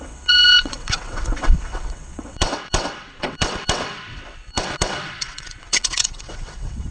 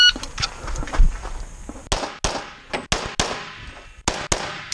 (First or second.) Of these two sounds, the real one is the second